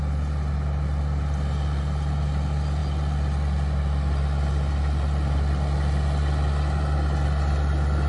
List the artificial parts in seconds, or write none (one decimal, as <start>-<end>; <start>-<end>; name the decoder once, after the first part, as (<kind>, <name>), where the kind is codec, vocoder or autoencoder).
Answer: none